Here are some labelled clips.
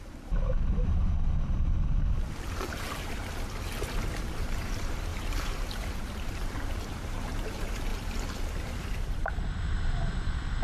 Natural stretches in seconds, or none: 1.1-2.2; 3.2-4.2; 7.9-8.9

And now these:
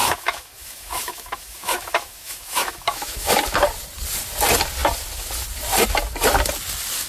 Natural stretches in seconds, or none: 3.3-7.1